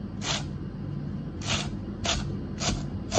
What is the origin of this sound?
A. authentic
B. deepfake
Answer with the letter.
A